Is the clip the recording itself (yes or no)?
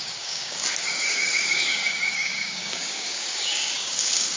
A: no